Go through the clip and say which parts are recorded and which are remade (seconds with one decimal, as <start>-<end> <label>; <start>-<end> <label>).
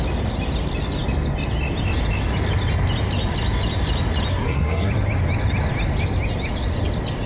0.0-4.3 recorded; 4.3-4.9 remade; 4.9-7.3 recorded